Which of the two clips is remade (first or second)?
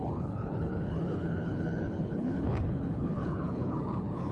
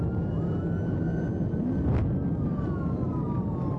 first